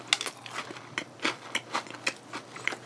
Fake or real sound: real